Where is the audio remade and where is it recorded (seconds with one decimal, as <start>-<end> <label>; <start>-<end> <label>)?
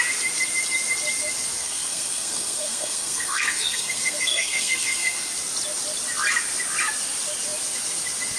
0.0-1.6 recorded; 1.6-5.3 remade; 5.3-8.4 recorded